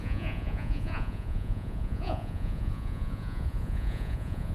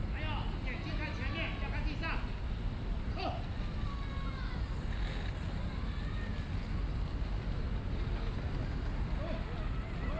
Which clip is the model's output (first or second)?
first